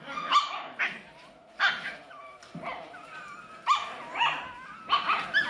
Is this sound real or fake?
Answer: fake